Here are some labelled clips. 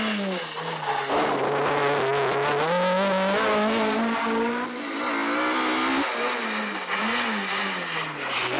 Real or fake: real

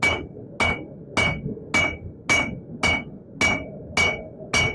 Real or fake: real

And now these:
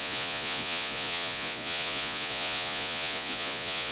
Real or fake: fake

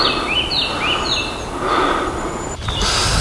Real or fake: real